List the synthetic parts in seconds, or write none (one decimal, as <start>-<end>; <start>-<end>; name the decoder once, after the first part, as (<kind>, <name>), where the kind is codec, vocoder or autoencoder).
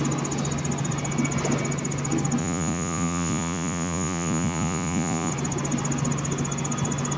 2.4-5.3 (vocoder, Vocos)